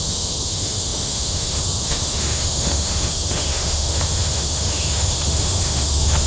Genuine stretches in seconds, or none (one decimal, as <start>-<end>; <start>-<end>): none